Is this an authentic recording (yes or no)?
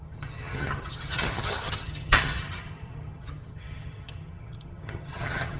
no